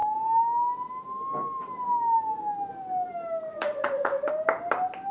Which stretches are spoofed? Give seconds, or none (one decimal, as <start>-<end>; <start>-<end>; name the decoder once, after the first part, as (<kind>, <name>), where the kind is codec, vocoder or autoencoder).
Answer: 3.5-4.3 (vocoder, Vocos)

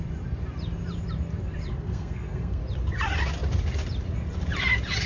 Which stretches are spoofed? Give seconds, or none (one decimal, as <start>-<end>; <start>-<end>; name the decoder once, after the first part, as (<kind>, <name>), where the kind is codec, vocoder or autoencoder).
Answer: 1.7-2.6 (codec, SNAC)

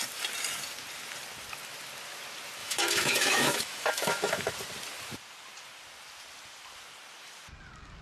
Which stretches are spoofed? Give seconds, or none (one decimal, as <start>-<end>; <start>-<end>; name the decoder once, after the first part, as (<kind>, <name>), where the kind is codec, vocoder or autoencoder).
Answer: 2.6-4.5 (autoencoder, DAC-VAE)

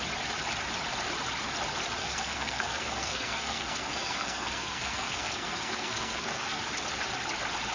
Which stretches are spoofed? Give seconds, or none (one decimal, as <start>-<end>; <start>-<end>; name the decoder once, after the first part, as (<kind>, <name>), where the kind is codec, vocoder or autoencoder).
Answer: 2.0-6.6 (codec, SNAC)

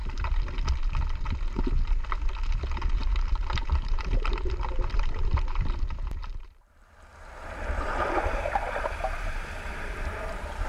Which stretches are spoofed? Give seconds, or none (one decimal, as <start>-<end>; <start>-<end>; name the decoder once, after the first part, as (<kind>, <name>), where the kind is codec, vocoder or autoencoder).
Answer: 3.0-5.8 (vocoder, BigVGAN v2); 6.2-10.7

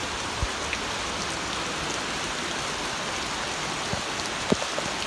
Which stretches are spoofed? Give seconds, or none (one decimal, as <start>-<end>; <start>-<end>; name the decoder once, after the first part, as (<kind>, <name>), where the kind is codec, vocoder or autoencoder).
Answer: none